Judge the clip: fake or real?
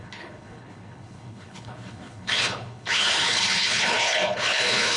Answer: fake